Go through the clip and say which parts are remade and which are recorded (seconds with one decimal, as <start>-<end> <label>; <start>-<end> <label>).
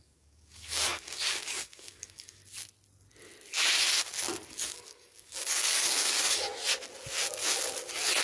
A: 0.0-2.4 remade; 2.4-4.5 recorded; 4.5-6.5 remade; 6.5-8.2 recorded